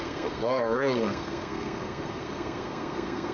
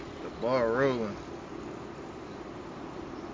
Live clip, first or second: second